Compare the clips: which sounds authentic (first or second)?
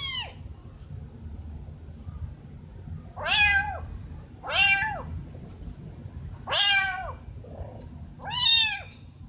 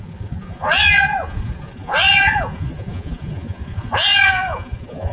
first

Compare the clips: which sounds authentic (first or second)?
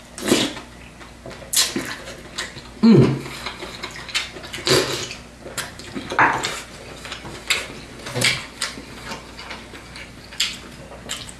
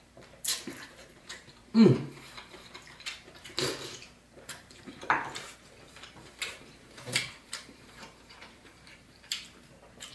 first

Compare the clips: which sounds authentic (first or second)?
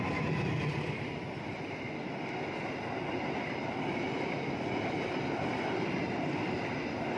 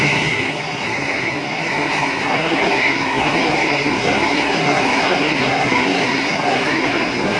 first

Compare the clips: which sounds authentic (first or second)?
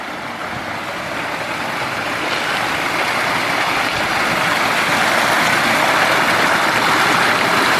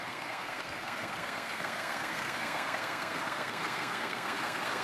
first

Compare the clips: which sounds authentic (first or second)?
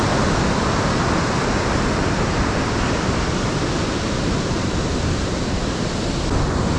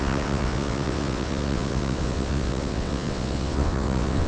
first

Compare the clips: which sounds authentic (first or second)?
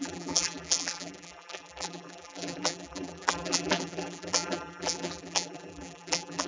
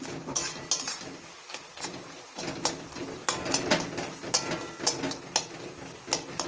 second